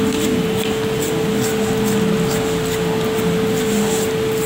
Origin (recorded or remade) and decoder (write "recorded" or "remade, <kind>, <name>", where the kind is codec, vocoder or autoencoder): recorded